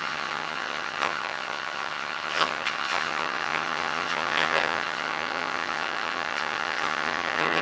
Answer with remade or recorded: remade